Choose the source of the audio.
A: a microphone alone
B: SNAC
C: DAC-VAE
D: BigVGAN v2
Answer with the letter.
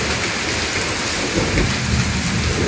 A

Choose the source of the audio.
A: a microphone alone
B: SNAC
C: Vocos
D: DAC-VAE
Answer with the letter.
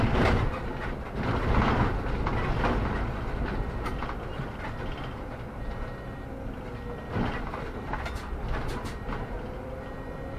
A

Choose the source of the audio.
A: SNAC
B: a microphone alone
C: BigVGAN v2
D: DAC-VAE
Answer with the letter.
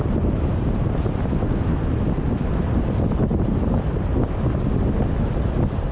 B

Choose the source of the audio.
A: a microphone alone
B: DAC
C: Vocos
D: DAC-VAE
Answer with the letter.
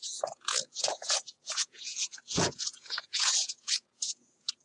C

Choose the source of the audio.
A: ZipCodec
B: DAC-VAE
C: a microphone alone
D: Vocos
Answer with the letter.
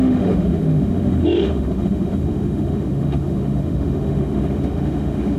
B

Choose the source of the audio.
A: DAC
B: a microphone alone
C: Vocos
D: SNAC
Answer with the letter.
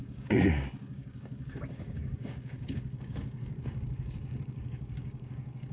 A